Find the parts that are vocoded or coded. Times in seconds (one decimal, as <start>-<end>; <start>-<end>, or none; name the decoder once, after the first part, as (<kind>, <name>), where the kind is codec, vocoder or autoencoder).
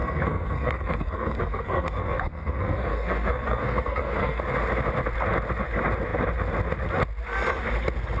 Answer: 0.0-4.4 (codec, SNAC)